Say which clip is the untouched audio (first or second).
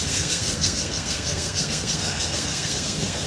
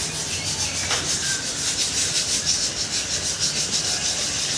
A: second